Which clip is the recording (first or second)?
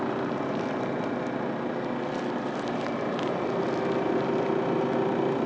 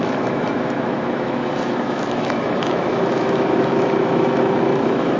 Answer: first